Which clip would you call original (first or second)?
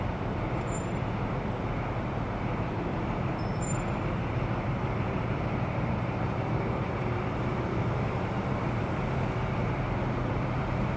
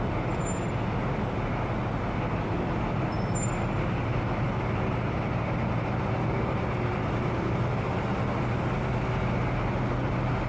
second